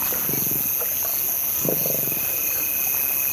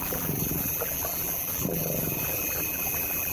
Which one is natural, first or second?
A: first